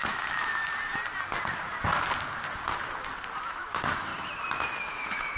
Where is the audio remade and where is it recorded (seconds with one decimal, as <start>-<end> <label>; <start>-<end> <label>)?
0.0-0.6 remade; 0.6-3.4 recorded; 3.4-4.1 remade; 4.1-4.8 recorded; 4.8-5.4 remade